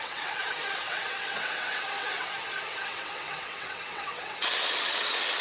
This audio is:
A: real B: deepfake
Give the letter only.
B